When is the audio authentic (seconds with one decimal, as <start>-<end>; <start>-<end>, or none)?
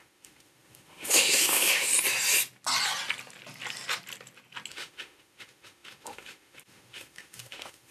1.9-4.7